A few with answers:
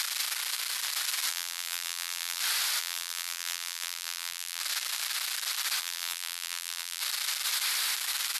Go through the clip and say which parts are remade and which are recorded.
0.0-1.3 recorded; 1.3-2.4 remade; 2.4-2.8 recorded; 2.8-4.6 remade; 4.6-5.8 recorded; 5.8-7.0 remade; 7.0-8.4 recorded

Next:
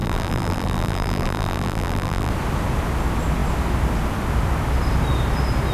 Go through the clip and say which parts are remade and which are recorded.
0.0-2.3 remade; 2.3-5.7 recorded